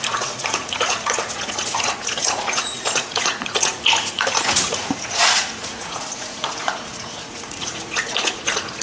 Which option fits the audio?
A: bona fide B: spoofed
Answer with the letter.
B